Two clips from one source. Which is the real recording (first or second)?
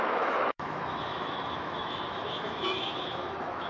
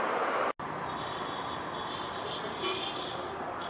second